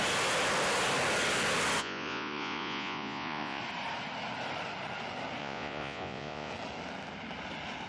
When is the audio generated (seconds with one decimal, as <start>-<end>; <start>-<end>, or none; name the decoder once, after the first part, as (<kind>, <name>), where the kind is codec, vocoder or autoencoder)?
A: 1.8-3.6 (vocoder, Vocos); 5.4-6.5